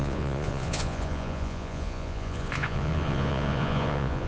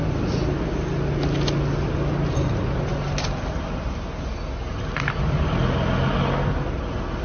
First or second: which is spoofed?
first